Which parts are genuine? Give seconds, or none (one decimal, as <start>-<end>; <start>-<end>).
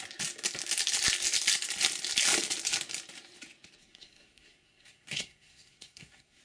0.0-3.8